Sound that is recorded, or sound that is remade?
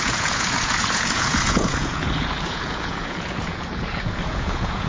remade